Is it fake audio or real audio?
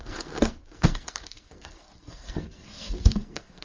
fake